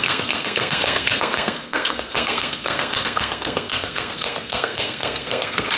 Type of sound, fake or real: fake